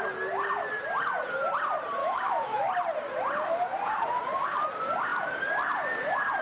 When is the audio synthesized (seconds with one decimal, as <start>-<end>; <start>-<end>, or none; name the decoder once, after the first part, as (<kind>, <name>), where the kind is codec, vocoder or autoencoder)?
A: 2.0-2.7 (autoencoder, DAC-VAE)